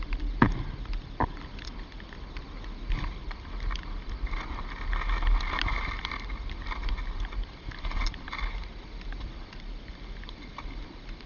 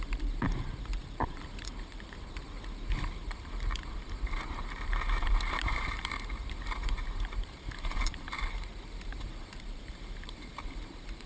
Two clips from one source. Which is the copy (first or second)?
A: second